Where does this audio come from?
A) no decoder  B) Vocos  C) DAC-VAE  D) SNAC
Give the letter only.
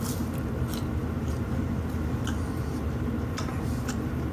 A